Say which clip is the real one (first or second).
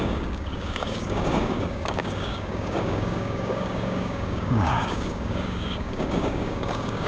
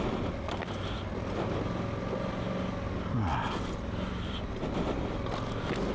second